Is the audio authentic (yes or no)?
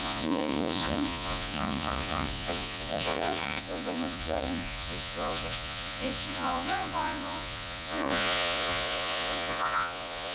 no